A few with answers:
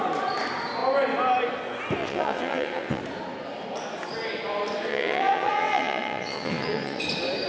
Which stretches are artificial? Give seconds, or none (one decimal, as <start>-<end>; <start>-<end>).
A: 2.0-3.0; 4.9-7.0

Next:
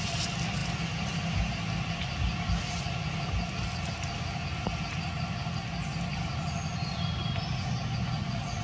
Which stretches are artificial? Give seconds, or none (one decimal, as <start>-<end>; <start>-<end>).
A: none

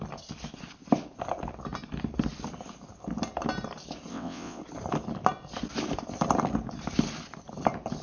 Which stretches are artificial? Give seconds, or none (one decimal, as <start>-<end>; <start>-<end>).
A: 4.1-4.6